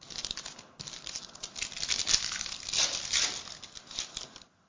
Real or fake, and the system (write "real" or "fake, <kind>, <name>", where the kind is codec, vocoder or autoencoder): real